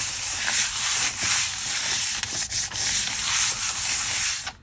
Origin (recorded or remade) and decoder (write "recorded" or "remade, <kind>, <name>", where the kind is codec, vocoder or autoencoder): recorded